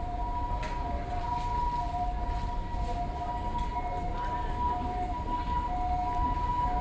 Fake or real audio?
real